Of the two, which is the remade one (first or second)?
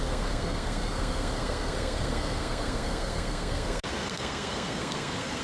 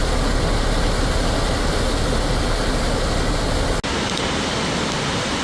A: first